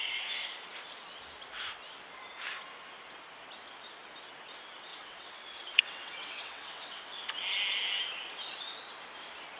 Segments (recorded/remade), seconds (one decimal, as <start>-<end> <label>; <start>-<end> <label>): 0.0-4.9 recorded; 4.9-7.2 remade; 7.2-9.6 recorded